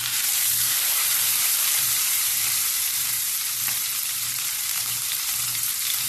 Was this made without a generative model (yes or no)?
no